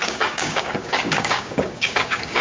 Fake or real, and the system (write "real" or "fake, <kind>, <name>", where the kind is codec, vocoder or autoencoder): fake, codec, DAC